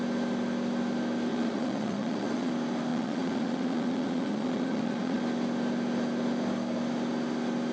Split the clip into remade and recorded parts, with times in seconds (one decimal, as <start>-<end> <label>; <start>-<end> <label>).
0.0-1.3 recorded; 1.3-2.5 remade; 2.5-2.9 recorded; 2.9-5.2 remade; 5.2-7.7 recorded